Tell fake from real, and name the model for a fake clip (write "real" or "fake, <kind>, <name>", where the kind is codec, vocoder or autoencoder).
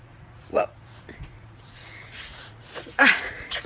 fake, vocoder, Vocos